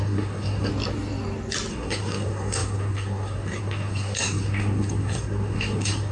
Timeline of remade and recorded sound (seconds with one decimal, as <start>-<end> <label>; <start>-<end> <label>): 0.0-0.7 remade; 0.7-1.7 recorded; 1.7-6.1 remade